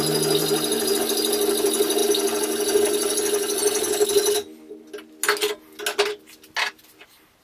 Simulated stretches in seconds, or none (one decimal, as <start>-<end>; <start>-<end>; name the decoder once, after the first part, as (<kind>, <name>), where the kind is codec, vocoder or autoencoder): 0.4-1.0 (vocoder, BigVGAN v2)